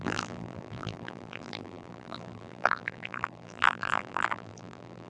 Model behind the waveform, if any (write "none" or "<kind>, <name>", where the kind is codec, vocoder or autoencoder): vocoder, BigVGAN v2